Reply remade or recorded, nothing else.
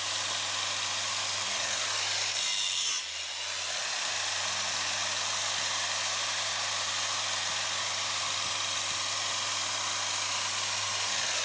recorded